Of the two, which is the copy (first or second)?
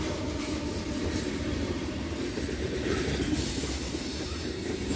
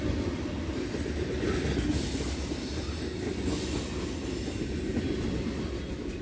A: first